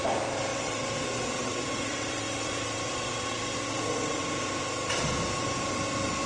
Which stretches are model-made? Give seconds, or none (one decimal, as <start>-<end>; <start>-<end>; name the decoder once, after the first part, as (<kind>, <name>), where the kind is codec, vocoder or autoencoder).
0.5-4.2 (vocoder, WaveNeXt)

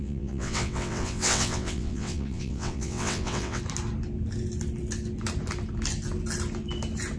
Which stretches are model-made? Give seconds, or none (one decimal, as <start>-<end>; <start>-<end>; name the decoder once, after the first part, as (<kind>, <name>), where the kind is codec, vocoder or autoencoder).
0.0-3.6 (vocoder, WaveNeXt)

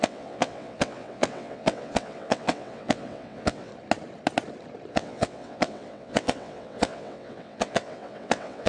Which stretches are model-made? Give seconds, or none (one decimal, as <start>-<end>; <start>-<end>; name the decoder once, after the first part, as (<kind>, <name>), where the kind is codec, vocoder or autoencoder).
0.0-3.7 (vocoder, WaveNeXt); 4.9-8.7

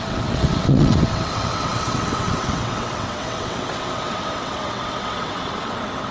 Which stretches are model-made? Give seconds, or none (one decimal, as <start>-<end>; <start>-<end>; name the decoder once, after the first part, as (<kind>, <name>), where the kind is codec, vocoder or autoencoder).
0.0-6.1 (vocoder, WaveNeXt)

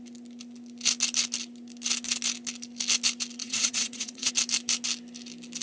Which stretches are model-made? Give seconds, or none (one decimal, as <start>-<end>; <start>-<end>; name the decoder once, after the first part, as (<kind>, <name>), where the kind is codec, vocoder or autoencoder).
3.4-4.3 (vocoder, WaveNeXt)

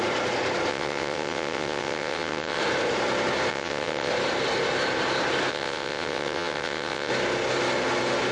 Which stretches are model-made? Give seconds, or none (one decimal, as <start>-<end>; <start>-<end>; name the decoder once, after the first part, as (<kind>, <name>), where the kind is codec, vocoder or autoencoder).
0.7-2.6 (vocoder, WaveNeXt); 3.5-4.1; 5.5-7.1